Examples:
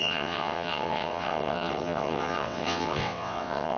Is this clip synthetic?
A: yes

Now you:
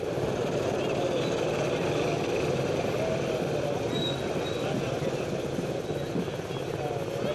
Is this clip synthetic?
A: no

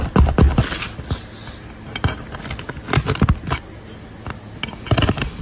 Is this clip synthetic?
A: no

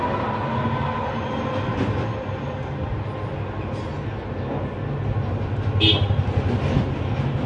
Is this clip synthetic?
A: no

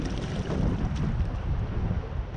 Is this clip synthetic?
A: no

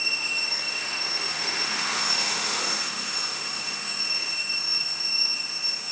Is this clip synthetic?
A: yes